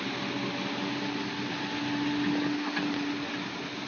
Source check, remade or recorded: recorded